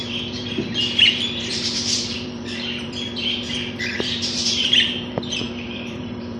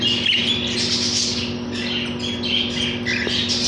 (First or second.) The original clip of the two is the second